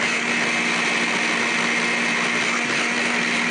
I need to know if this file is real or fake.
real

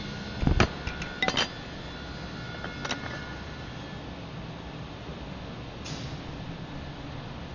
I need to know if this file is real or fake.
real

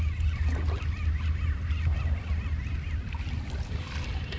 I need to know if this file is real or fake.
real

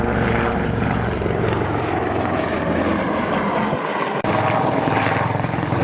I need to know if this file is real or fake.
fake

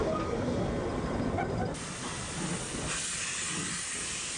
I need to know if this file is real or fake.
real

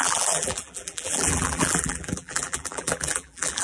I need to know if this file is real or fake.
fake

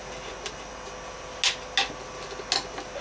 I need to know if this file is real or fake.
real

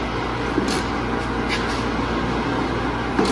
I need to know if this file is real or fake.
real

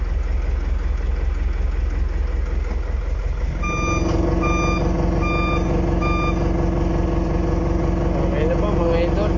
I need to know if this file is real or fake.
real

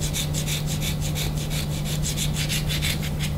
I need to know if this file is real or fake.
real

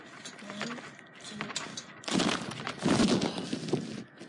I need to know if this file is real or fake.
real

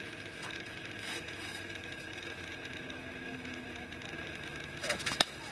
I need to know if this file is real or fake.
fake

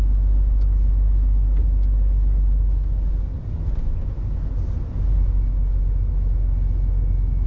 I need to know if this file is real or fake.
real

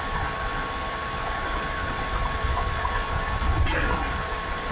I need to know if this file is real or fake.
real